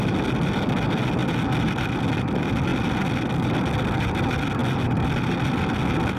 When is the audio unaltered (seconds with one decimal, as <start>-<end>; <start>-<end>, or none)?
0.0-6.2